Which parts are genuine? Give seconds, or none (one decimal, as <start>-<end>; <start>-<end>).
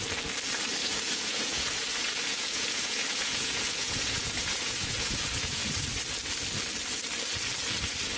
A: 0.0-0.8; 5.7-8.2